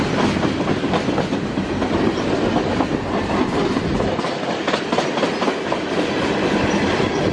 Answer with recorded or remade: recorded